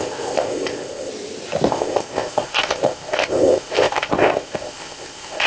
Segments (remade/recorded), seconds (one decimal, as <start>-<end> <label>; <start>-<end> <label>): 0.0-1.1 remade; 1.1-1.7 recorded; 1.7-5.5 remade

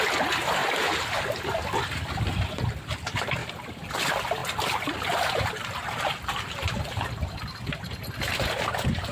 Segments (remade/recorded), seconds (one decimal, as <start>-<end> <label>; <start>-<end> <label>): 0.0-3.4 recorded; 3.4-3.9 remade; 3.9-4.4 recorded; 4.4-5.5 remade; 5.5-9.1 recorded